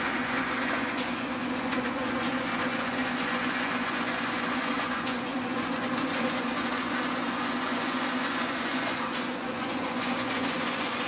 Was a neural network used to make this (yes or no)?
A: yes